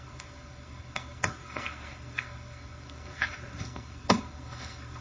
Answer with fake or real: fake